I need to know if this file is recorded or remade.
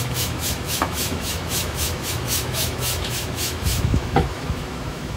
remade